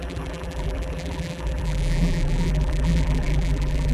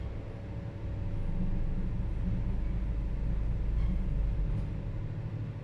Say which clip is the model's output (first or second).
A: first